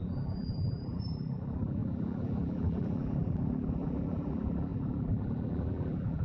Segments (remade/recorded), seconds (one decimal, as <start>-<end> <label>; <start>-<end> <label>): 0.0-6.2 remade